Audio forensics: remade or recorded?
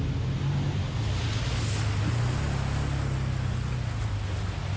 recorded